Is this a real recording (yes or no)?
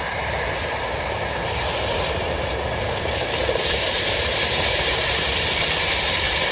no